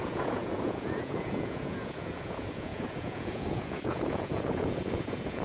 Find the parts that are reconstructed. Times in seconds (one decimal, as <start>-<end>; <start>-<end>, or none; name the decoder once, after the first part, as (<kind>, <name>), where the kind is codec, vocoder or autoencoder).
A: 0.0-5.4 (vocoder, Vocos)